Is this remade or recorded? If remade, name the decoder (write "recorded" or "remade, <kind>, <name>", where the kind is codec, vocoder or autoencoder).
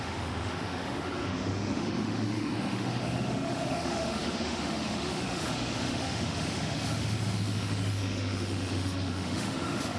remade, autoencoder, DAC-VAE